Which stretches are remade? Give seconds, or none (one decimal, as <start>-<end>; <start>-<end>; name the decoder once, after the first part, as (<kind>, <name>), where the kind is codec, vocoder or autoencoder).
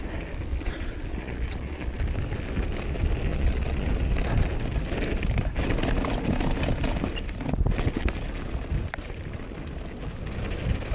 0.5-2.0 (vocoder, Vocos); 3.3-3.9